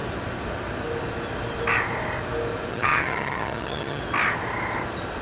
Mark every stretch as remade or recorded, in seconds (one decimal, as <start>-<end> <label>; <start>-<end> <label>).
0.0-2.7 recorded; 2.7-4.0 remade; 4.0-5.2 recorded